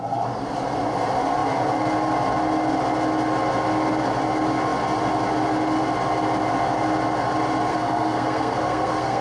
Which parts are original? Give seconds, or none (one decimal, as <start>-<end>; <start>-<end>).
0.0-7.7